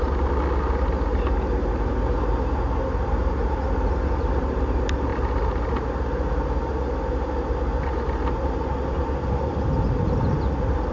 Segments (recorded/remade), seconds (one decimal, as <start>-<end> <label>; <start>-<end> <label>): 0.0-10.9 recorded